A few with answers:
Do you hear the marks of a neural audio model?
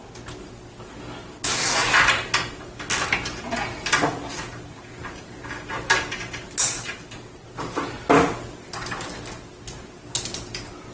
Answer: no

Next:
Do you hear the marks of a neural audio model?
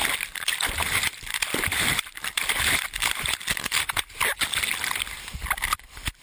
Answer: no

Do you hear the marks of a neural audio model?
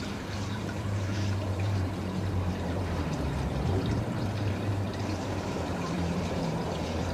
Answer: yes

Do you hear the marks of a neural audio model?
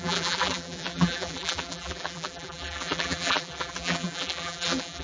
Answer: yes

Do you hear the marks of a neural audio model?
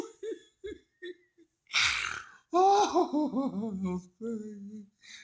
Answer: no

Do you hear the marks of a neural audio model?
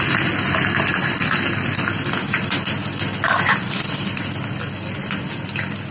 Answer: yes